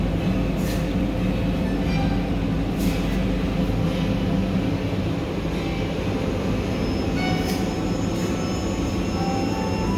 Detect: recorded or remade recorded